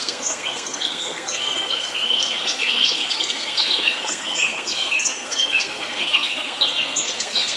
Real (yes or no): no